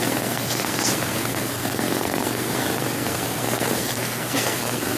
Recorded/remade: remade